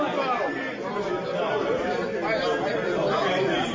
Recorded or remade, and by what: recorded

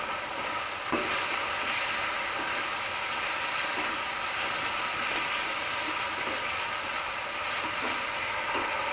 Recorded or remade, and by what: recorded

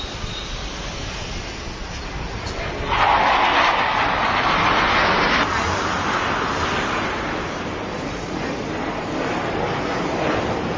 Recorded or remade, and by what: recorded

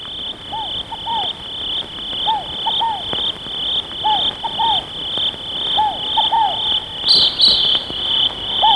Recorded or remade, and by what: recorded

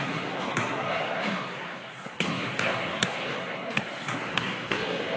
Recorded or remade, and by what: remade, codec, SNAC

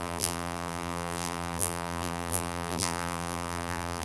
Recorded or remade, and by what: remade, vocoder, BigVGAN v2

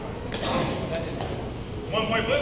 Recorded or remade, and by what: recorded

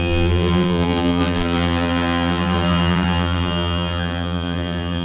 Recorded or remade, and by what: remade, vocoder, BigVGAN v2